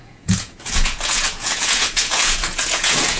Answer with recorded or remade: remade